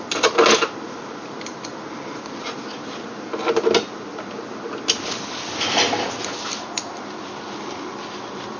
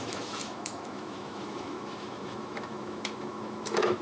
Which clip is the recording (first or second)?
first